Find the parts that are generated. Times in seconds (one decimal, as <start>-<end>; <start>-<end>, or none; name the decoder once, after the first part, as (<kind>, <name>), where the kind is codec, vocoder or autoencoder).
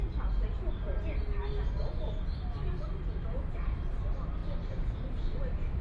4.4-5.2 (vocoder, BigVGAN v2)